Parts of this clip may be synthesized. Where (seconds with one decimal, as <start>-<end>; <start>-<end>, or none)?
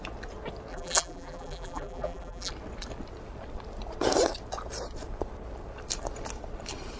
0.7-2.5